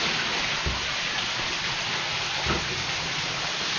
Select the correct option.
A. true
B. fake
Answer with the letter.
A